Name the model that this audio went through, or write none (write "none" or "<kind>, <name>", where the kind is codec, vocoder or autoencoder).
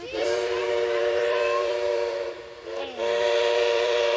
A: vocoder, BigVGAN v2